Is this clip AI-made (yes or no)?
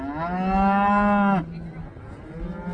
no